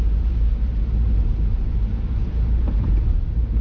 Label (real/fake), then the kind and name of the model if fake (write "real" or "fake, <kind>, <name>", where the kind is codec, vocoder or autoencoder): fake, vocoder, BigVGAN v2